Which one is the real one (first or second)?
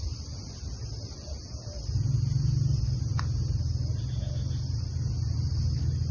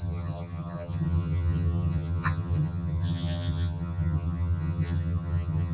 first